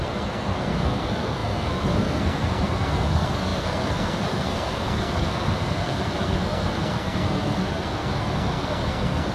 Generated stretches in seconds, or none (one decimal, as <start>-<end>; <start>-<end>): 0.0-9.3